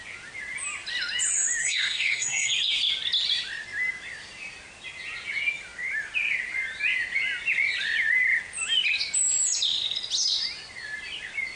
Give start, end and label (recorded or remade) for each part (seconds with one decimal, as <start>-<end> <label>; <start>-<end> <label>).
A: 0.0-1.6 recorded; 1.6-2.5 remade; 2.5-11.6 recorded